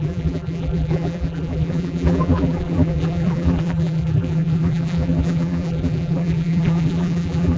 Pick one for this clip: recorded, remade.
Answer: remade